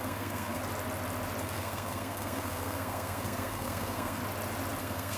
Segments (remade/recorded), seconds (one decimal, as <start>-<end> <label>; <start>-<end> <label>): 0.0-0.6 remade; 0.6-1.4 recorded; 1.4-4.2 remade; 4.2-4.8 recorded; 4.8-5.2 remade